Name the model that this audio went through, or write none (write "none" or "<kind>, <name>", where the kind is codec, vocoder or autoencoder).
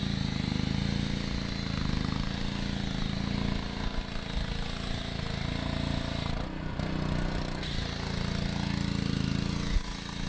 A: none